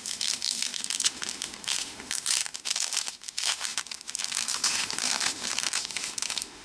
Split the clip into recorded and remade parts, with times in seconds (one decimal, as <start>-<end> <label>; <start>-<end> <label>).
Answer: 0.0-6.6 remade